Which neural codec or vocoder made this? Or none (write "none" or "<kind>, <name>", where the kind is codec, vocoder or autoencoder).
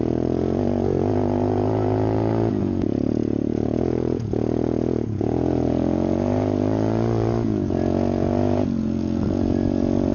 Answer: vocoder, Vocos